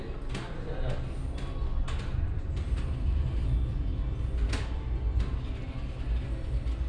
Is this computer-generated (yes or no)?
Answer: no